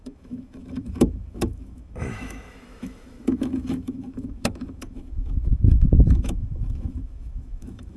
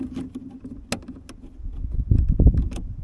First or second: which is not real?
first